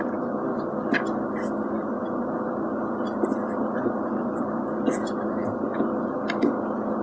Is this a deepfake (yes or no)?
no